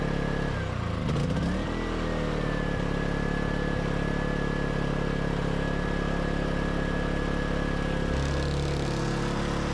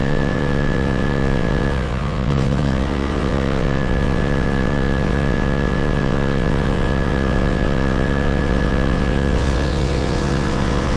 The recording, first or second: first